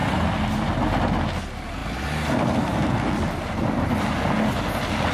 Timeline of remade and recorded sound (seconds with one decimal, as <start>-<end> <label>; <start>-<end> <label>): 0.0-5.1 recorded